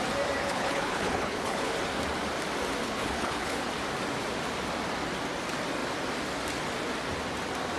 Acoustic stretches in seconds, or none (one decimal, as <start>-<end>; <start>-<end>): 0.0-0.4; 1.7-2.8; 3.7-7.8